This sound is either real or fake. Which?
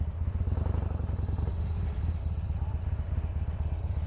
real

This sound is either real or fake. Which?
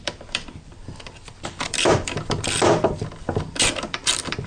fake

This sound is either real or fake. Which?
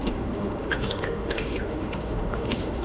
fake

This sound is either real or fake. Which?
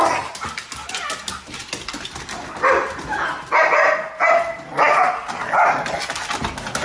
real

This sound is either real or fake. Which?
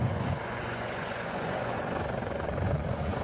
fake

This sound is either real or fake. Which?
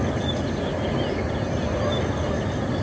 real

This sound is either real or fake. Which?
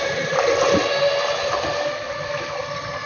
real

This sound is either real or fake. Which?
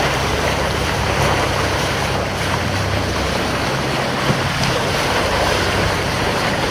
fake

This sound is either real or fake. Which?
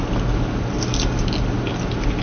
real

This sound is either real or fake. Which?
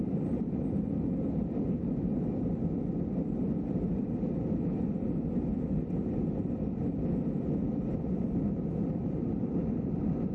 fake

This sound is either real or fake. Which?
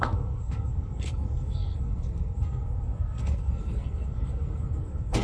fake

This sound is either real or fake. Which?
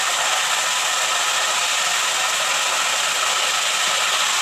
real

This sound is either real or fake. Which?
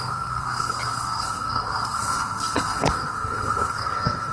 fake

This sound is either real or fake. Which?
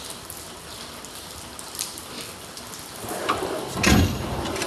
real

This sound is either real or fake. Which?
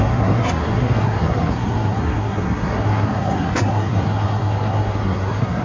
fake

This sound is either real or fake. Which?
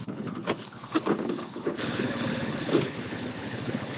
fake